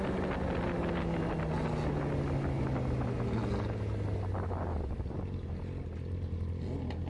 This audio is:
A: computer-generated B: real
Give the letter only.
B